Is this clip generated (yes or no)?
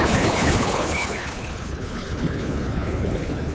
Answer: yes